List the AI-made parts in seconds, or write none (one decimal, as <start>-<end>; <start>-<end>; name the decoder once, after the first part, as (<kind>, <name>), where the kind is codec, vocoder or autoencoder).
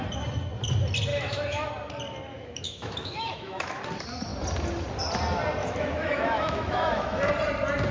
1.1-1.7 (autoencoder, DAC-VAE); 2.3-3.8; 5.6-7.3